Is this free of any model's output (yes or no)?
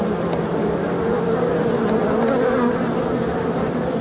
yes